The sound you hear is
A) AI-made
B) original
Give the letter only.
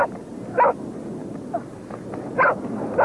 B